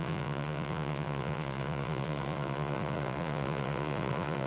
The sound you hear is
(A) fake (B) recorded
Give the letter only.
A